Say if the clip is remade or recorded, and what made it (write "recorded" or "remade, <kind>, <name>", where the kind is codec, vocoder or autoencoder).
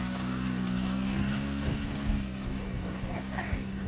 remade, codec, DAC